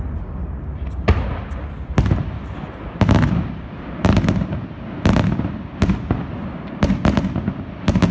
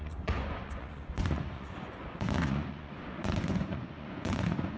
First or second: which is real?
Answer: first